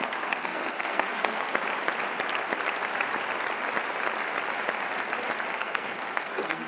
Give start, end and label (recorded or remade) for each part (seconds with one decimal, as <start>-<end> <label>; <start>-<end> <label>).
0.0-1.5 remade; 1.5-5.5 recorded; 5.5-6.7 remade